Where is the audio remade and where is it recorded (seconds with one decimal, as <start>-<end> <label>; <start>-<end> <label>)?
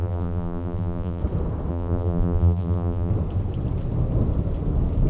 0.0-1.2 remade; 1.2-1.7 recorded; 1.7-3.1 remade; 3.1-5.1 recorded